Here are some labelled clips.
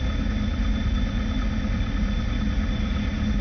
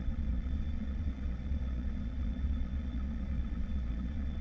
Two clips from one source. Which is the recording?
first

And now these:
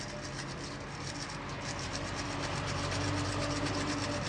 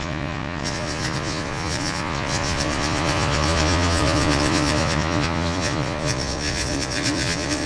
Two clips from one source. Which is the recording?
first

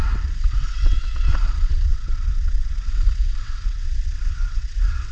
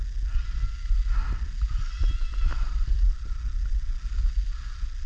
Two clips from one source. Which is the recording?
second